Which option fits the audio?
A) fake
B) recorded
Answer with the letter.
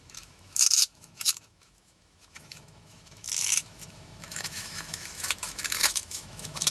A